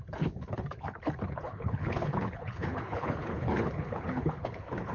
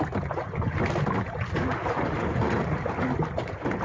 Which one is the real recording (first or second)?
second